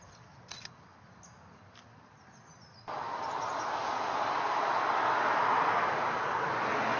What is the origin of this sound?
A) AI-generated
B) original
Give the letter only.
B